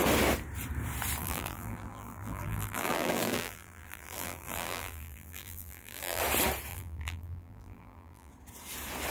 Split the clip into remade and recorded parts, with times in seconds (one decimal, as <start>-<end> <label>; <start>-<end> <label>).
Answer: 0.0-1.2 recorded; 1.2-6.2 remade; 6.2-6.7 recorded; 6.7-8.3 remade; 8.3-9.1 recorded